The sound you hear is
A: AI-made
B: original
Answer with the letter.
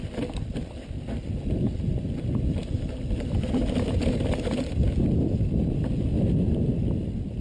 B